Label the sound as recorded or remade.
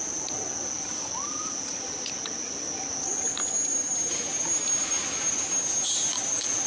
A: recorded